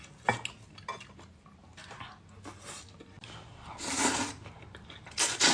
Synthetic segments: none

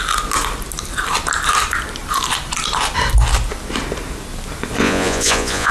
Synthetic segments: 4.8-5.7 (vocoder, Vocos)

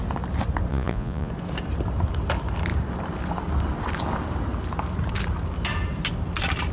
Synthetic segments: 0.7-1.3 (vocoder, Vocos)